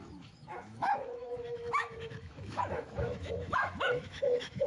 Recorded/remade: remade